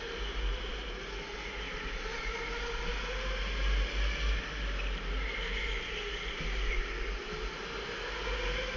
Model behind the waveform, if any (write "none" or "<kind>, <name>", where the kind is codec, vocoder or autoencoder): none